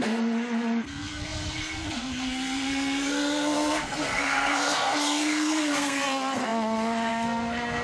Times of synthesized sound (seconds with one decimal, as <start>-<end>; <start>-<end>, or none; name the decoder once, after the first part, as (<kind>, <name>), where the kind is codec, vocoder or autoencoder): 0.0-7.8 (codec, SNAC)